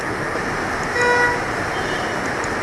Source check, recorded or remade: recorded